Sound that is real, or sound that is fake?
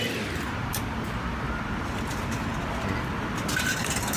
real